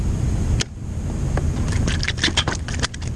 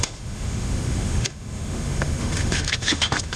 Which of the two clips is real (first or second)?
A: first